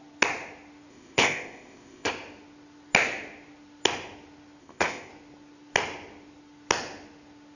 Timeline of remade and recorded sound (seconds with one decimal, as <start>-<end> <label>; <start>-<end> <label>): 0.0-0.9 recorded; 0.9-2.1 remade; 2.1-4.6 recorded; 4.6-5.1 remade; 5.1-7.6 recorded